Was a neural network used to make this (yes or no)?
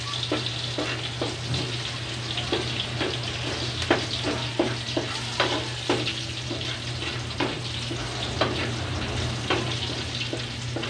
no